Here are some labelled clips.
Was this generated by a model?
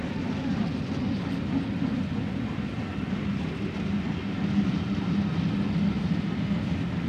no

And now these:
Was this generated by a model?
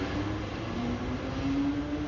no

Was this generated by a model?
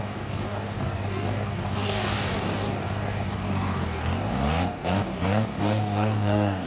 yes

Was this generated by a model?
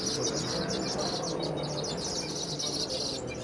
no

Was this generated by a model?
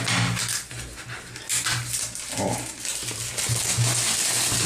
no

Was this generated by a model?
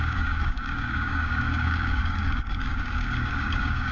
yes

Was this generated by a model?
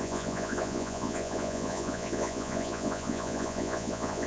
yes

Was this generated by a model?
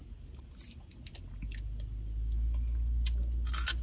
no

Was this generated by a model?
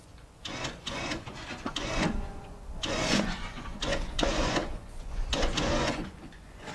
yes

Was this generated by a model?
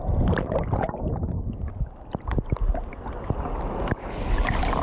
no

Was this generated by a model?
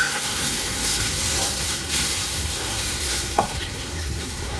yes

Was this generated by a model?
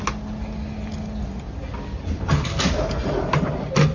no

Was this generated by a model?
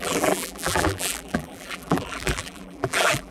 yes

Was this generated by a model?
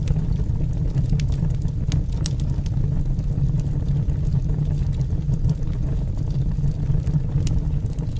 no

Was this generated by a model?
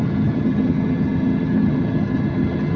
yes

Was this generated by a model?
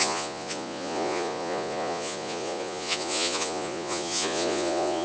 yes